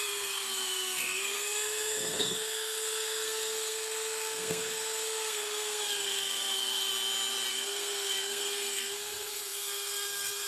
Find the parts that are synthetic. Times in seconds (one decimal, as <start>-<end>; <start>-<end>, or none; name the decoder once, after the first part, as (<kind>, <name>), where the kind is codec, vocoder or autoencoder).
0.0-6.9 (codec, SNAC); 7.5-10.5